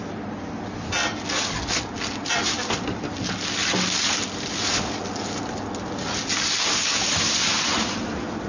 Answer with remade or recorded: recorded